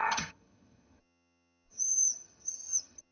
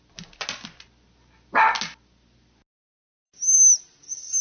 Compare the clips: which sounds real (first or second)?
second